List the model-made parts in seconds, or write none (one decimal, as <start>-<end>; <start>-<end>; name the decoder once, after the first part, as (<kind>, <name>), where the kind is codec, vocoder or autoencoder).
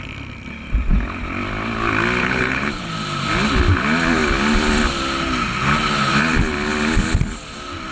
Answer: 2.2-2.9 (codec, HILCodec)